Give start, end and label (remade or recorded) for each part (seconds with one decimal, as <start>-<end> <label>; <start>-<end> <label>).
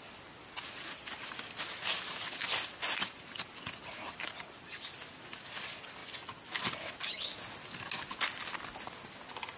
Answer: 0.0-9.6 recorded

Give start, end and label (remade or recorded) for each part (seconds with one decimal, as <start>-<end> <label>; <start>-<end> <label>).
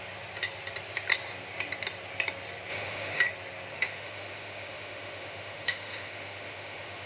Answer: 0.0-2.7 recorded; 2.7-3.2 remade; 3.2-3.7 recorded; 3.7-7.1 remade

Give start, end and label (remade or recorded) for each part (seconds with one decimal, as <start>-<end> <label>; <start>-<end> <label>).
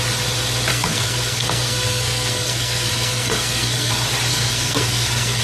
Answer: 0.0-0.7 recorded; 0.7-3.9 remade; 3.9-4.3 recorded; 4.3-5.4 remade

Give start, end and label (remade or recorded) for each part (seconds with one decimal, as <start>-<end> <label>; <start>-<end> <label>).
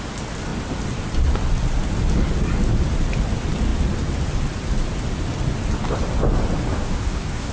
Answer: 0.0-6.7 recorded; 6.7-7.5 remade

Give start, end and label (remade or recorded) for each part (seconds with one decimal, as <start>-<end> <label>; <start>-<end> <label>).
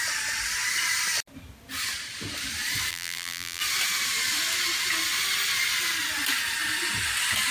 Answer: 0.0-2.9 recorded; 2.9-3.6 remade; 3.6-7.5 recorded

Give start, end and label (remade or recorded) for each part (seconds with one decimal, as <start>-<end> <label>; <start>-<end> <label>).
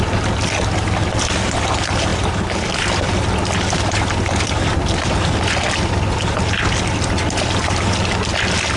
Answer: 0.0-8.8 recorded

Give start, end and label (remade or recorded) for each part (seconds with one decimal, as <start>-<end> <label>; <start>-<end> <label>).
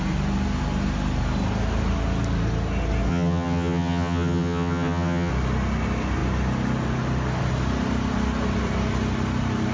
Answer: 0.0-3.1 recorded; 3.1-5.3 remade; 5.3-9.7 recorded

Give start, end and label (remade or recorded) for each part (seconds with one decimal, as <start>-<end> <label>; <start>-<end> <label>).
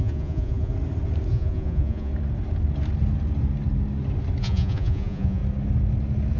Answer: 0.0-0.7 remade; 0.7-1.3 recorded; 1.3-2.1 remade; 2.1-4.4 recorded; 4.4-5.4 remade; 5.4-6.4 recorded